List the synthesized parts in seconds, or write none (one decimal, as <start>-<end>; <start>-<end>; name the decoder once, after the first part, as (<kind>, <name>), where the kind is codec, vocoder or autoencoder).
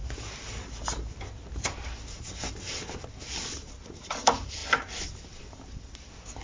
none